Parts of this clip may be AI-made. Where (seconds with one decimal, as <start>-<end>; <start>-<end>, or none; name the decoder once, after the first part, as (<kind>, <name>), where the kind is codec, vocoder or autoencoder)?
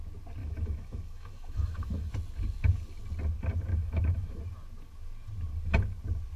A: 0.4-2.1 (autoencoder, DAC-VAE); 3.7-4.4